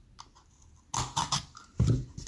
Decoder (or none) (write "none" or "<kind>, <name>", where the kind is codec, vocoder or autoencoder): none